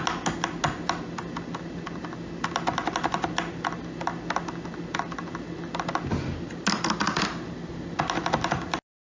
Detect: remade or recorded recorded